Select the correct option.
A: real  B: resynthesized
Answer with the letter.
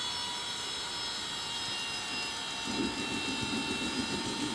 A